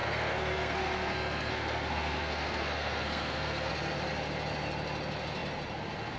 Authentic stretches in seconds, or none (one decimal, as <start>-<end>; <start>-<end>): 3.7-6.2